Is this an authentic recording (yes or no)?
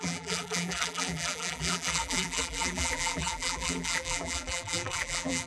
no